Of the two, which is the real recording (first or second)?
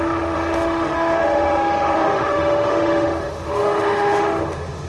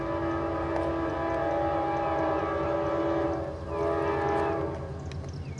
second